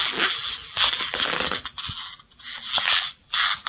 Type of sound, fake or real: fake